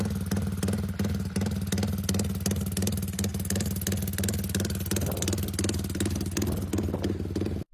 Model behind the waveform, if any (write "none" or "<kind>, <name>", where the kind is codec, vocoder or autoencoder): none